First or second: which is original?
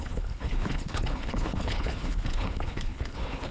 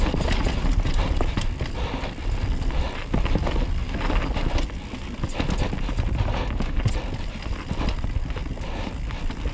second